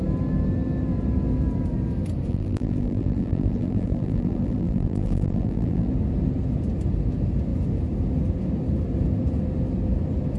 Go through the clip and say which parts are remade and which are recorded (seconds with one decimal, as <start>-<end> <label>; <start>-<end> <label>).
0.0-2.3 recorded; 2.3-5.9 remade; 5.9-10.4 recorded